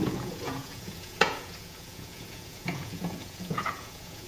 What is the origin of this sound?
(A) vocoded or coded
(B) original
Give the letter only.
A